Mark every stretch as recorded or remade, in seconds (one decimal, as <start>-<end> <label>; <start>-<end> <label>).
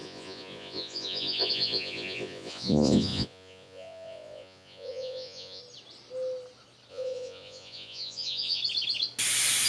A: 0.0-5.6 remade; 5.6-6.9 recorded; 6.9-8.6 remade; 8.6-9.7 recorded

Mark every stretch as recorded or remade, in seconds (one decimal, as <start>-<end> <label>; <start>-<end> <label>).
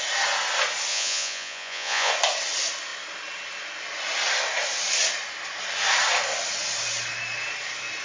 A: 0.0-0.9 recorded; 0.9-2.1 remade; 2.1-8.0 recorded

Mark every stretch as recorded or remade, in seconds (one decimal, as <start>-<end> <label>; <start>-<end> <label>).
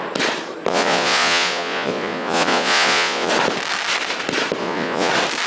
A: 0.0-0.7 recorded; 0.7-3.3 remade; 3.3-4.6 recorded; 4.6-5.1 remade; 5.1-5.5 recorded